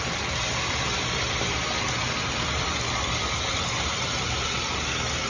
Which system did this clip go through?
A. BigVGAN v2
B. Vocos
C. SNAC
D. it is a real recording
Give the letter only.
D